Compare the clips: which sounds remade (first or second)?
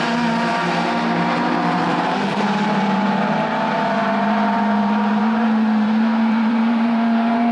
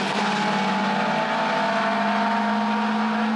first